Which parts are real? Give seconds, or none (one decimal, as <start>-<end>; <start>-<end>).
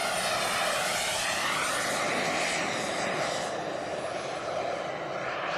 0.0-5.6